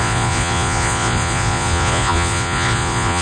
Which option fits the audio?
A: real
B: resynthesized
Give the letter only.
B